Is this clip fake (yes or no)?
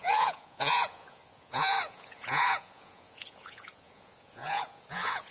yes